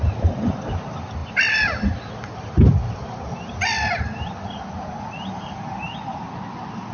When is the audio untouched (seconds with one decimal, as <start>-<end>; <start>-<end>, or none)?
0.0-6.9